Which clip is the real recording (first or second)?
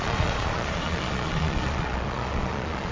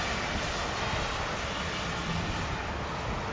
second